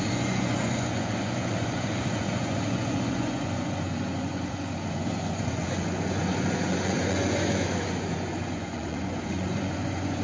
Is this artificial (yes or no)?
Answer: yes